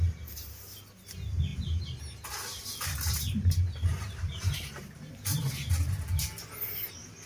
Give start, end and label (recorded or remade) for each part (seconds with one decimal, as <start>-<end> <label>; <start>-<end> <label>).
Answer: 0.0-1.5 recorded; 1.5-2.0 remade; 2.0-2.5 recorded; 2.5-5.4 remade; 5.4-7.3 recorded